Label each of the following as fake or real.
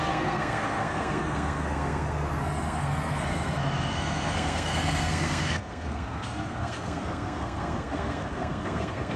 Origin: fake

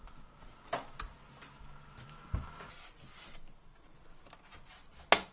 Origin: real